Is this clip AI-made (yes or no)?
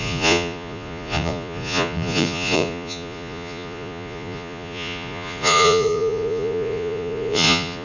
yes